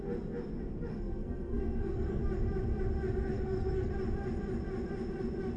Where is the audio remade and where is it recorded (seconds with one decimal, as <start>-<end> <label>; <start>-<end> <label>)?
0.0-0.9 recorded; 0.9-2.2 remade; 2.2-3.2 recorded; 3.2-3.9 remade; 3.9-5.6 recorded